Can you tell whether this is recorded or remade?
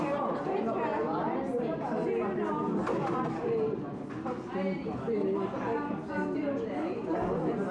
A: recorded